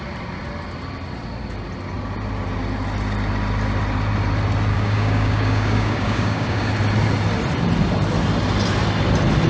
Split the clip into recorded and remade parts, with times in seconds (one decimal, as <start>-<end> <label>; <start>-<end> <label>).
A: 0.0-4.7 recorded; 4.7-6.7 remade; 6.7-9.5 recorded